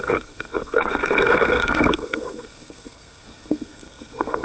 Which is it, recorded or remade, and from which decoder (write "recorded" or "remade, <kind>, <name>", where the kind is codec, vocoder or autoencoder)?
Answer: remade, codec, SNAC